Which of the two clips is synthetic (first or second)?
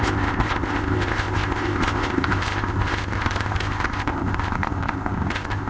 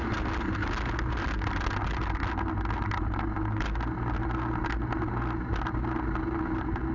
first